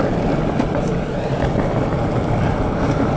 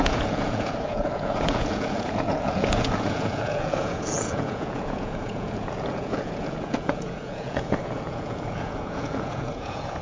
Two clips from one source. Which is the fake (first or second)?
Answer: second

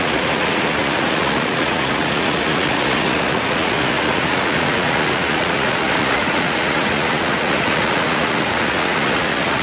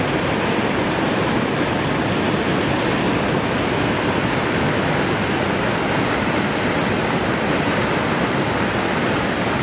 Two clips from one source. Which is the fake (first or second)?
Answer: first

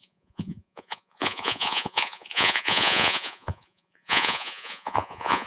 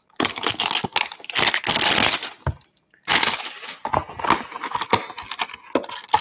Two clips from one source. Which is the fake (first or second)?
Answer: first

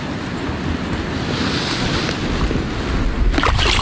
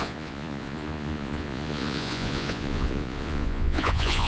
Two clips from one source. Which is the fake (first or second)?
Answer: second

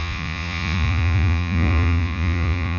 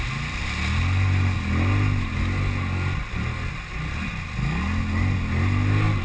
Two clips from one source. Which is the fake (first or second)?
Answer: first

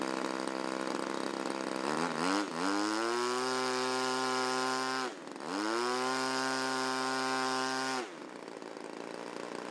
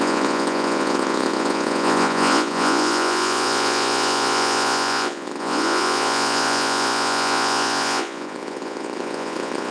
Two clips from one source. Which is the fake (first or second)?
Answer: second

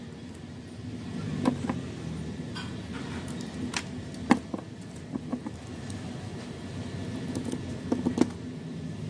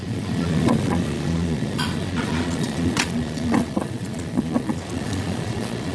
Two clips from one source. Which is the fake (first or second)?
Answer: second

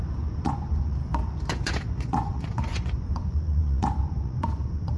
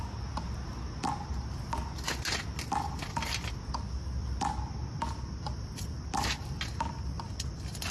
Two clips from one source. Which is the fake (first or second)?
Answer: first